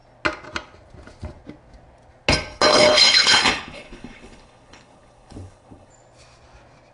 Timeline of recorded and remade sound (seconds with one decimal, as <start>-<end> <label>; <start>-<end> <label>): 0.0-2.7 recorded; 2.7-5.9 remade; 5.9-6.9 recorded